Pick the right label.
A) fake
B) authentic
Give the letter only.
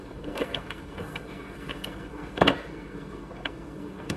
A